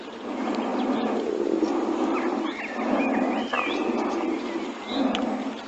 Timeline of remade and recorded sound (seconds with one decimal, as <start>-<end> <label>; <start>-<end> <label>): 0.0-5.7 recorded